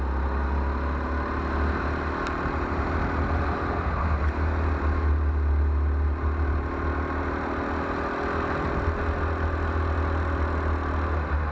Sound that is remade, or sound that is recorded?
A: recorded